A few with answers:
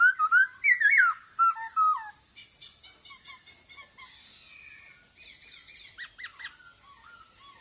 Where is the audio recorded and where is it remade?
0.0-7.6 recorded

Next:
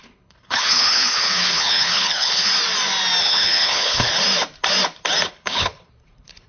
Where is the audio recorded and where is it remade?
0.0-2.5 remade; 2.5-3.2 recorded; 3.2-4.1 remade; 4.1-5.3 recorded; 5.3-6.5 remade

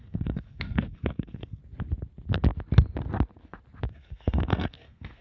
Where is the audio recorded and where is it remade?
0.0-1.6 remade; 1.6-3.9 recorded; 3.9-5.2 remade